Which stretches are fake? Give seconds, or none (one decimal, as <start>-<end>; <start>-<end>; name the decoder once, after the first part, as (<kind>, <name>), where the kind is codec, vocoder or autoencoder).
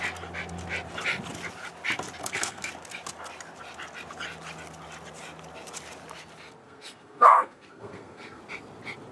2.2-2.7 (codec, SNAC); 6.6-8.4